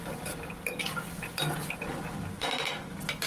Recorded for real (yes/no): yes